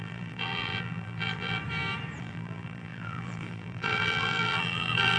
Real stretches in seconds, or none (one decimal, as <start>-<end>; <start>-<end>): 1.6-2.2